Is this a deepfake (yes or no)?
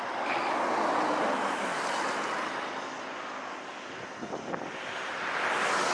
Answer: no